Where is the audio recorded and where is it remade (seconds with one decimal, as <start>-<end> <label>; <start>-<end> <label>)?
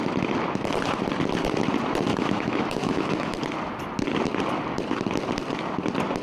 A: 0.0-2.1 recorded; 2.1-3.4 remade; 3.4-6.2 recorded